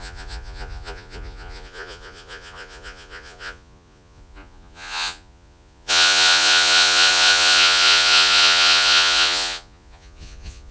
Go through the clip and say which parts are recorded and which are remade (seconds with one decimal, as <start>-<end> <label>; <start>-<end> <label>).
0.0-10.7 remade